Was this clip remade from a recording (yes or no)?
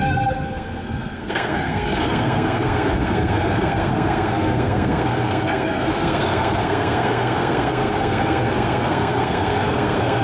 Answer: yes